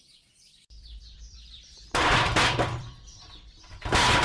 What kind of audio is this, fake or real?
fake